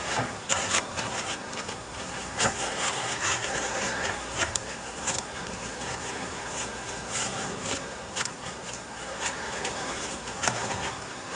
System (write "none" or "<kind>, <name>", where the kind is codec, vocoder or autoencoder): codec, SNAC